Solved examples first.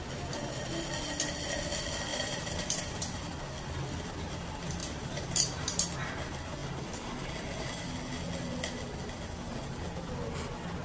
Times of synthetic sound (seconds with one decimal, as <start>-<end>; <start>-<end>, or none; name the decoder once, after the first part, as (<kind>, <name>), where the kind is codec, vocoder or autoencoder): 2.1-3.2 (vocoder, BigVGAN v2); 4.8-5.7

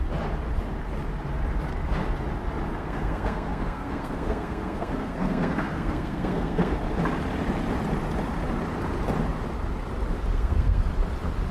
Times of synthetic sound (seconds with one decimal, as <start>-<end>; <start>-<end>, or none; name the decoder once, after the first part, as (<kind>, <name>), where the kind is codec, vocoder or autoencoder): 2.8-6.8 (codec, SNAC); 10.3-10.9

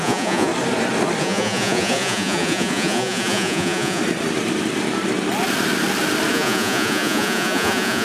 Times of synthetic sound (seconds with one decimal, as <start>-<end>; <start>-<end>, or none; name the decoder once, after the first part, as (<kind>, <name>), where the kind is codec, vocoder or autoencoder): 0.0-0.5 (vocoder, Vocos); 1.2-4.0; 6.3-8.0